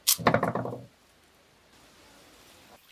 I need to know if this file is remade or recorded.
recorded